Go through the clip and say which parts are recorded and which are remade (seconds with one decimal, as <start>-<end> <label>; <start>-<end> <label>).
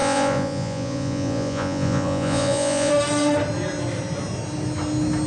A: 0.0-2.9 remade; 2.9-5.3 recorded